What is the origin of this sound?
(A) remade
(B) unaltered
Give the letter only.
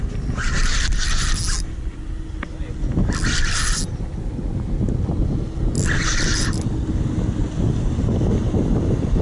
B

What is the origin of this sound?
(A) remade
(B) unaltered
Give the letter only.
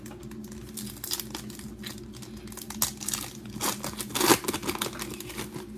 B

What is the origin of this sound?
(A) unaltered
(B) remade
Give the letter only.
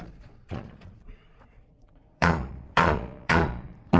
B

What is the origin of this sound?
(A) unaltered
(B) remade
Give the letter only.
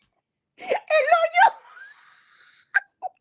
A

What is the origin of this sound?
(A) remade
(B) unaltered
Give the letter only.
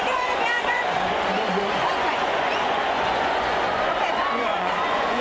A